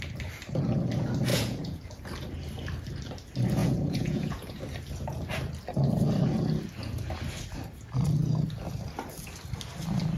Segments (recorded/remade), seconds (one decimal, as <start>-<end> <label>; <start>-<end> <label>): 0.0-1.3 recorded; 1.3-1.8 remade; 1.8-3.6 recorded; 3.6-4.6 remade; 4.6-10.2 recorded